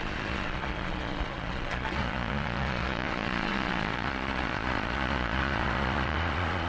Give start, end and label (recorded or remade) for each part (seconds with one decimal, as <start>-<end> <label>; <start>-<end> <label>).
0.0-6.7 remade